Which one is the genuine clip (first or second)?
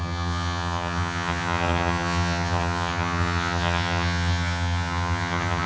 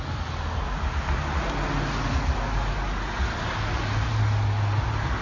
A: second